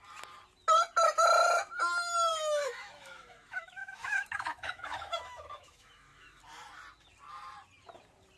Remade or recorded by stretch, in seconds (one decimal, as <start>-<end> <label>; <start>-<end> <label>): 0.0-2.3 recorded; 2.3-6.4 remade; 6.4-8.4 recorded